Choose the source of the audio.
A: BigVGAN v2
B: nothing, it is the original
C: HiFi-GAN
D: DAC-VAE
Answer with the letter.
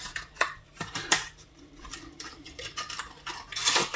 A